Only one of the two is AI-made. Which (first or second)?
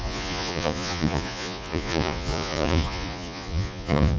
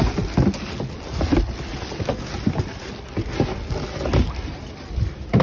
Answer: first